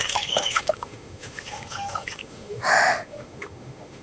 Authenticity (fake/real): fake